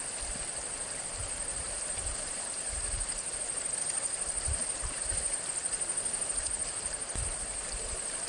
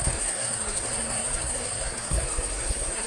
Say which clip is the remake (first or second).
second